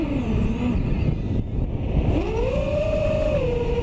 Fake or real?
real